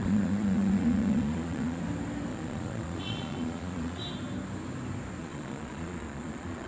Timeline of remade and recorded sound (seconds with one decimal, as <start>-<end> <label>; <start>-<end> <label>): 0.0-1.8 remade; 1.8-2.3 recorded; 2.3-4.0 remade; 4.0-5.2 recorded; 5.2-6.7 remade